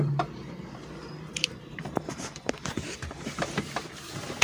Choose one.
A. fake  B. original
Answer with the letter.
A